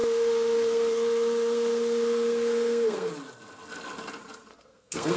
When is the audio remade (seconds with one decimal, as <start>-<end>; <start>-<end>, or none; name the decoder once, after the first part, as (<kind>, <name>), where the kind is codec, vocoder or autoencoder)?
0.0-3.1 (codec, SNAC); 4.5-5.2

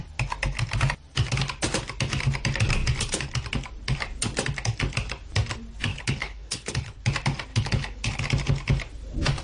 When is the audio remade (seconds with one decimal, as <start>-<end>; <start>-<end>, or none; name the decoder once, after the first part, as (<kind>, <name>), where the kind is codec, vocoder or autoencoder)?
5.9-7.0 (codec, HILCodec); 7.5-8.2

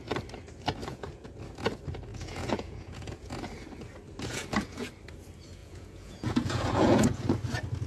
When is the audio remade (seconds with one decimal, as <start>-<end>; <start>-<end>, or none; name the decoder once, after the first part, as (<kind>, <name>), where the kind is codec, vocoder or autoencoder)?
0.8-1.3 (vocoder, Vocos); 2.1-3.3; 4.3-4.9; 5.6-7.2

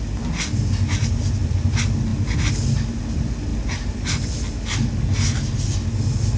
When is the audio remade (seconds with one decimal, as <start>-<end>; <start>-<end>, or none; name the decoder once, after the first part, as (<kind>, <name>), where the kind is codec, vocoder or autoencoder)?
none

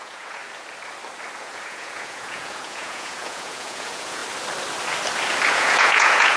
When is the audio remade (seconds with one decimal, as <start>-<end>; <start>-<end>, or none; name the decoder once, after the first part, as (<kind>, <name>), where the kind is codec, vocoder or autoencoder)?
0.0-0.4 (vocoder, Vocos); 1.4-4.2; 5.5-6.4

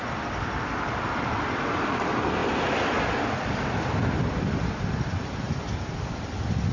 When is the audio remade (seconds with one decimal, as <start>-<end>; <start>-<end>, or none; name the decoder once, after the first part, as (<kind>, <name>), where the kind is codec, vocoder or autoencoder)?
none

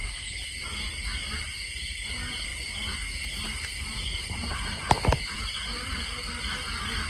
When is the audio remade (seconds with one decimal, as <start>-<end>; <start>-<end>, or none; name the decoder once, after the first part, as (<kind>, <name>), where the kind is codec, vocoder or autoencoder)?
0.0-0.6 (vocoder, BigVGAN v2)